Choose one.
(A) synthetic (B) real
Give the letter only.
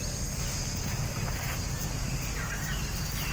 B